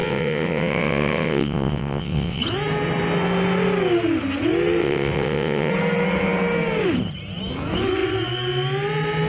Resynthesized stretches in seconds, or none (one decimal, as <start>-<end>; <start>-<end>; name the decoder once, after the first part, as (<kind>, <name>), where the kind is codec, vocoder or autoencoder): 0.0-2.4 (vocoder, WaveNeXt); 4.8-5.7